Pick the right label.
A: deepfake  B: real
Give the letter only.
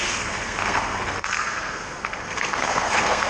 A